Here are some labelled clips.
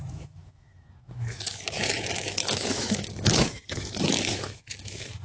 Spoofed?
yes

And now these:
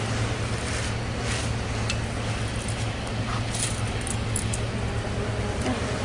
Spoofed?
no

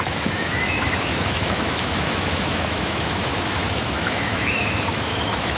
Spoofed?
yes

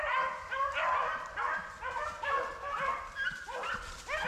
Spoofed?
no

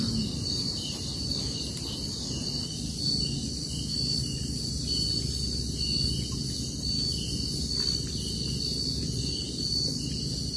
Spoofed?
no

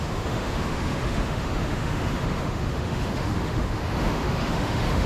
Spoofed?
yes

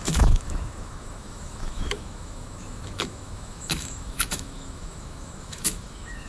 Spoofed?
yes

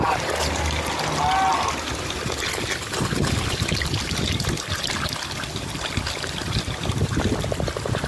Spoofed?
no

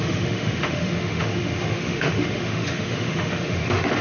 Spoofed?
yes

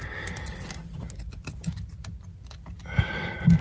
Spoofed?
no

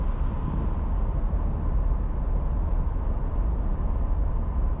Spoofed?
no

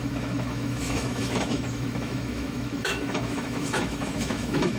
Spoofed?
yes